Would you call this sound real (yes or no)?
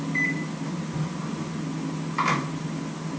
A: yes